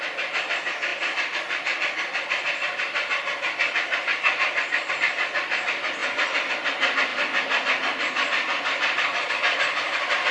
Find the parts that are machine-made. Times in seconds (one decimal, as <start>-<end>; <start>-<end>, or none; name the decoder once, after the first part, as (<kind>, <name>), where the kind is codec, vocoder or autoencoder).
none